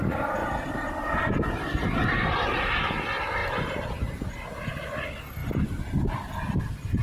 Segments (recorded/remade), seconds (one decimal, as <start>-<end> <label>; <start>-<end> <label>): 0.0-0.4 recorded; 0.4-2.8 remade; 2.8-3.4 recorded; 3.4-4.5 remade; 4.5-7.0 recorded